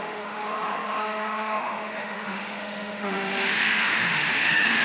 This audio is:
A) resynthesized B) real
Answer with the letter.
A